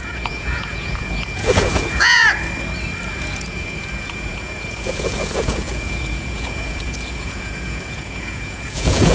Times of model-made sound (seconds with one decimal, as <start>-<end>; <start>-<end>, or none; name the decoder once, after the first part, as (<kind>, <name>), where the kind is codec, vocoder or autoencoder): 0.0-2.2 (vocoder, Vocos); 3.1-9.1

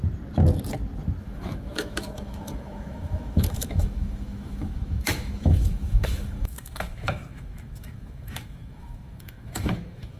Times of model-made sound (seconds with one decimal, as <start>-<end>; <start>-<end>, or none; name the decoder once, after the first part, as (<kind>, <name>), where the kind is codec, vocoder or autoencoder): 1.2-10.2 (autoencoder, DAC-VAE)